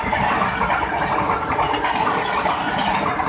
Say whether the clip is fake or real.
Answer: real